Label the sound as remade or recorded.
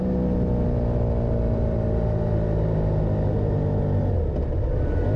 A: recorded